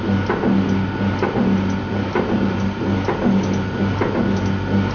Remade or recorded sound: recorded